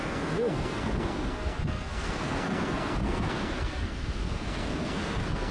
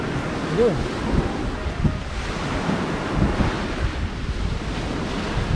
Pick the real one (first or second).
second